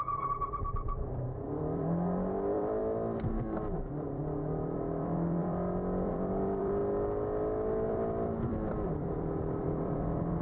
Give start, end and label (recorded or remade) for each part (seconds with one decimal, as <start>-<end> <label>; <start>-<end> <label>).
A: 0.0-2.8 remade; 2.8-3.8 recorded; 3.8-6.8 remade; 6.8-7.9 recorded; 7.9-10.4 remade